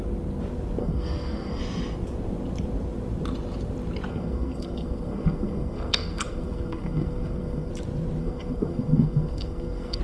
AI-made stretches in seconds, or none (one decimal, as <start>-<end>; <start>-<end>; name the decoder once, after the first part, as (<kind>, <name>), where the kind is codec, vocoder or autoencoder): 0.8-1.6 (codec, SNAC); 4.1-7.7; 8.2-10.0

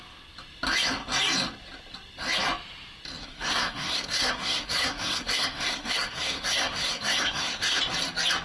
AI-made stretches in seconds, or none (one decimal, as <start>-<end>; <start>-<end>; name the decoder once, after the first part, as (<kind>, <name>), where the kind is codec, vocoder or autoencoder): 3.2-7.8 (codec, SNAC)

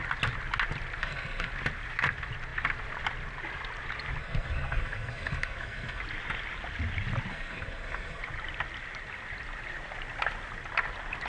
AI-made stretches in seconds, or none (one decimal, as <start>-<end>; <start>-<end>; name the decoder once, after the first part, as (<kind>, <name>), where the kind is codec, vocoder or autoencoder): 1.0-1.5 (codec, SNAC); 4.2-6.0; 7.3-8.2

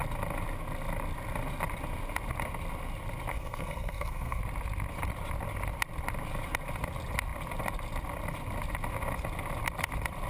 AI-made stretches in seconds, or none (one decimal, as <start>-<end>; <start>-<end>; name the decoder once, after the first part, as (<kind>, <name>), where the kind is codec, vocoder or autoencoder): 3.3-4.4 (codec, SNAC)

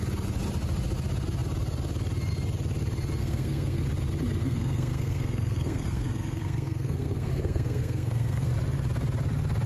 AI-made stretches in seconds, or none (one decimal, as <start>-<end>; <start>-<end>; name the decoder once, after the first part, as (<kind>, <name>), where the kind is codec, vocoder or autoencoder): 3.2-3.8 (codec, SNAC); 4.4-8.5

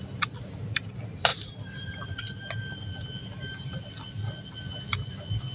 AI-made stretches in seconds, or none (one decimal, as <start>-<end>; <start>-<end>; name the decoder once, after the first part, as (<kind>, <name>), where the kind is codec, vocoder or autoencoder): none